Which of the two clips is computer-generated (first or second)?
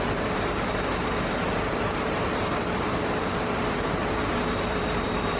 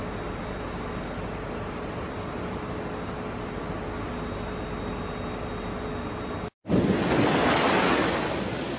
first